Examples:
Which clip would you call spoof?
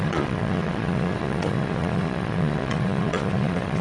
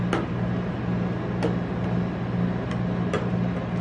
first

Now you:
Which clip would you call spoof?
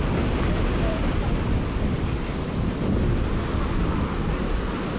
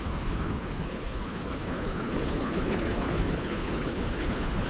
second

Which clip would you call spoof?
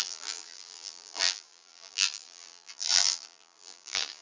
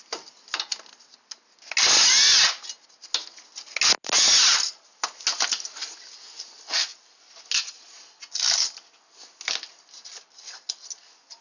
first